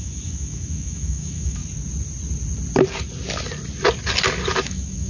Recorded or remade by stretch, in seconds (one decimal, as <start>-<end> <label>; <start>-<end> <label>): 0.0-1.6 remade; 1.6-4.6 recorded; 4.6-5.1 remade